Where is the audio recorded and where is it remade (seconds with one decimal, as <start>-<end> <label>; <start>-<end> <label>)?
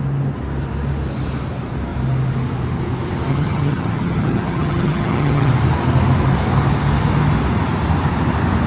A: 0.0-3.3 recorded; 3.3-5.5 remade; 5.5-8.7 recorded